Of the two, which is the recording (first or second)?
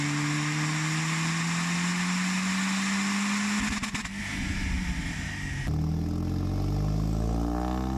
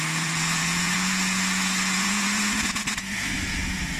first